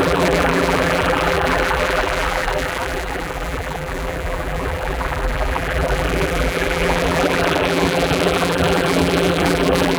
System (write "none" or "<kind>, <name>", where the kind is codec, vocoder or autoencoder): vocoder, BigVGAN v2